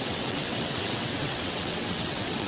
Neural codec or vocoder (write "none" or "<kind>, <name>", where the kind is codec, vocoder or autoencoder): vocoder, WaveNeXt